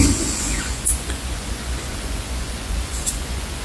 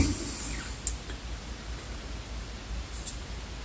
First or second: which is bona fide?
second